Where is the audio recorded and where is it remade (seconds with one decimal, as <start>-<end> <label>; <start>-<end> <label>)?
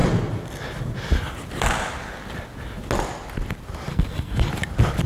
0.0-3.9 recorded; 3.9-4.5 remade; 4.5-5.1 recorded